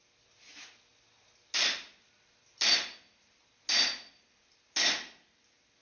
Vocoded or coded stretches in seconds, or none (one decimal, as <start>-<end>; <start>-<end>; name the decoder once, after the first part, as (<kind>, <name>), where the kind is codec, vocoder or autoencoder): none

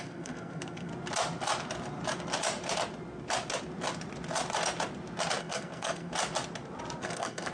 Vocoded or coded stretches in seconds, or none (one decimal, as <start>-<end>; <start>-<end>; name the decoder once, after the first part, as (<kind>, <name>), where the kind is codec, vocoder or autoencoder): 0.0-0.9 (codec, SNAC); 5.4-6.1; 7.0-7.5

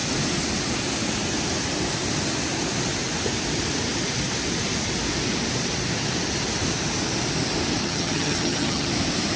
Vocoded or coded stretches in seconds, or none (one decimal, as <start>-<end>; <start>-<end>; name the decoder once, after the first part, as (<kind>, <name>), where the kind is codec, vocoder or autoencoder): 7.8-8.9 (vocoder, HiFi-GAN)

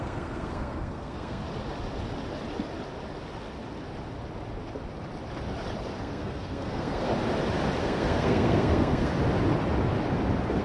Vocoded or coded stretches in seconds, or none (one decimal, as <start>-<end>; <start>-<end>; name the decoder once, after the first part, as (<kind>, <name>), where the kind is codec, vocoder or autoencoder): 0.0-1.4 (codec, SNAC); 6.0-7.1; 7.8-9.1

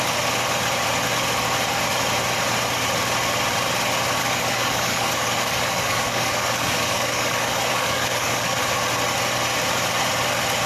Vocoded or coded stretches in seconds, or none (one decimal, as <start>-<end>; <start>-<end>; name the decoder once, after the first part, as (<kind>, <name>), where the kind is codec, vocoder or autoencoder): 4.2-8.6 (codec, DAC)

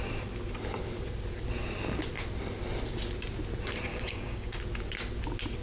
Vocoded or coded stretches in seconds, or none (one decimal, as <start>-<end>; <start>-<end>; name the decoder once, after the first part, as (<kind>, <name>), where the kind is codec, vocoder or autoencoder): 3.9-4.6 (codec, DAC)